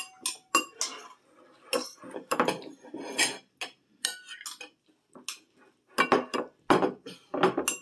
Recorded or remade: recorded